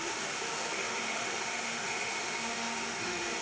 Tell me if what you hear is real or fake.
fake